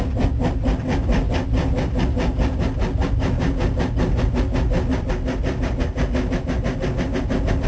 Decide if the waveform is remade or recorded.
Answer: recorded